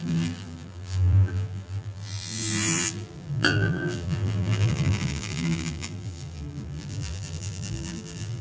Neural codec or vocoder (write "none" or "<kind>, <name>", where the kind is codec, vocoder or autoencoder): vocoder, BigVGAN v2